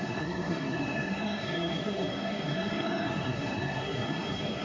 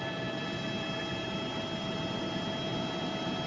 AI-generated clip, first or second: first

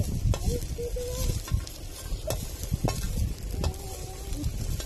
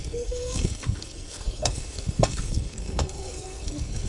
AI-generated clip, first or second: second